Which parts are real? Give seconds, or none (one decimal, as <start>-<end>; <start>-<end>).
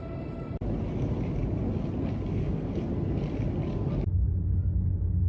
0.0-2.3; 2.8-5.3